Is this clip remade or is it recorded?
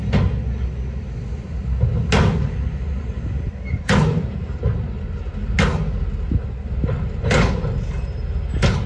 recorded